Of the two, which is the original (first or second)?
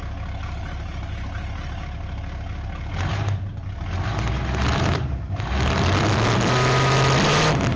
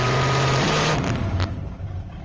first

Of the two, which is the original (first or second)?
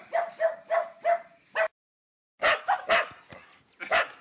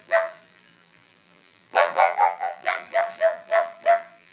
first